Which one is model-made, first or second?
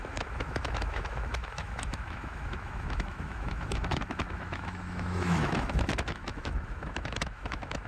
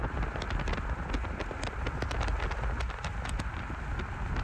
first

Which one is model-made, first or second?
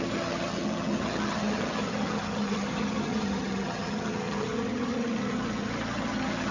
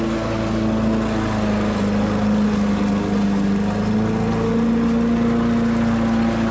first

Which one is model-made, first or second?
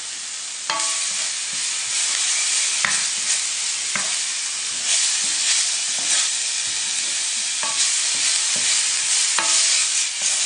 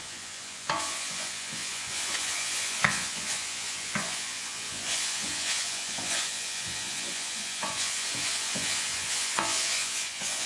second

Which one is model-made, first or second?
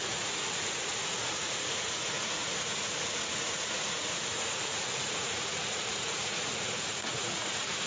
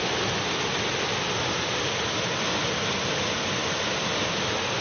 first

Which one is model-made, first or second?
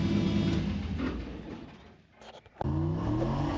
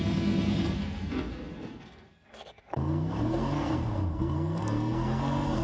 second